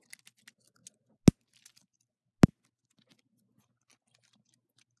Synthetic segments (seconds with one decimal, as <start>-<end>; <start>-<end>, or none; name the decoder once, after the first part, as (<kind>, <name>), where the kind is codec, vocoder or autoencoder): none